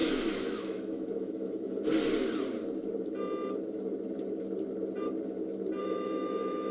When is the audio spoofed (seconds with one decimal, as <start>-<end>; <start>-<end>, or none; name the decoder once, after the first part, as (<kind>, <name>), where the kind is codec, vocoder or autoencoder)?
0.0-1.8 (autoencoder, DAC-VAE); 5.8-6.7

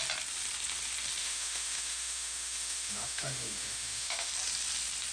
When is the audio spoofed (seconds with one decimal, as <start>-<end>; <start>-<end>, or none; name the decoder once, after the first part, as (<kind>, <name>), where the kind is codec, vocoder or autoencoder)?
1.2-4.3 (autoencoder, DAC-VAE)

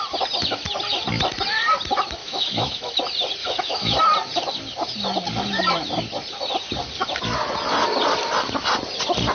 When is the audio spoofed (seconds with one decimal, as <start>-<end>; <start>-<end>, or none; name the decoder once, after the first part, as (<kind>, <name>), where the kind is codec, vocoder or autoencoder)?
2.2-3.0 (autoencoder, DAC-VAE); 3.4-4.0

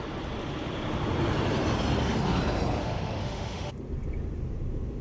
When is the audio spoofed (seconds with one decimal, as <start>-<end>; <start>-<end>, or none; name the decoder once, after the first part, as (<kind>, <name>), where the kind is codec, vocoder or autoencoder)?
2.8-3.7 (autoencoder, DAC-VAE)

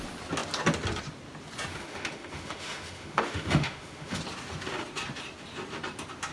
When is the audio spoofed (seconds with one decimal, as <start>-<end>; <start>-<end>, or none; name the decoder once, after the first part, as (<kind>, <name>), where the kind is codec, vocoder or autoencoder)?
1.7-4.2 (autoencoder, DAC-VAE)

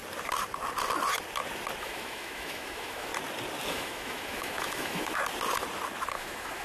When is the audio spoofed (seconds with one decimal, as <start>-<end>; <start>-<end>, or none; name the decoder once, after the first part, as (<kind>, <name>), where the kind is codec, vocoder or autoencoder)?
1.8-3.1 (autoencoder, DAC-VAE); 3.7-5.2; 6.1-6.6

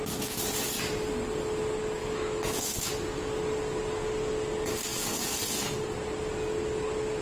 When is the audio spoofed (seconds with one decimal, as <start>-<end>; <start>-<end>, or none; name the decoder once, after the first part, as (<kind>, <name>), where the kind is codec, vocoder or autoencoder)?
2.0-2.9 (autoencoder, DAC-VAE)

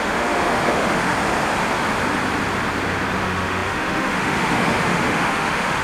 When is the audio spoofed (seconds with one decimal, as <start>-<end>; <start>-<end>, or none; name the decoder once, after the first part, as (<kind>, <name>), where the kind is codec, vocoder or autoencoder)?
0.0-1.1 (autoencoder, DAC-VAE); 3.2-5.8